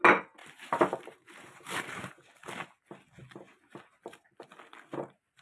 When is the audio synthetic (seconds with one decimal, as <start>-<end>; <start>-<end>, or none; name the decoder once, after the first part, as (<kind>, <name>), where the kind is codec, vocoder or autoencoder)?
0.4-2.1 (vocoder, BigVGAN v2)